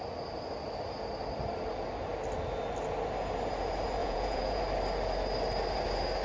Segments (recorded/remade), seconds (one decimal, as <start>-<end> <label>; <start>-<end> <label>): 0.0-4.0 recorded; 4.0-4.6 remade; 4.6-6.2 recorded